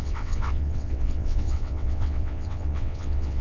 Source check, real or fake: fake